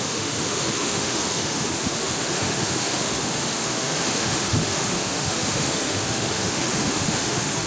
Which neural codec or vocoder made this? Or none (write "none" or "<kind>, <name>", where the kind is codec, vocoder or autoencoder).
autoencoder, DAC-VAE